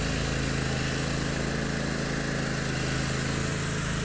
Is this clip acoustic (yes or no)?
yes